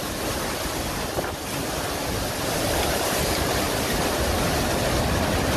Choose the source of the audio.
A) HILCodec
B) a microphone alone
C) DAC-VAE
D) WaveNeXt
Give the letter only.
B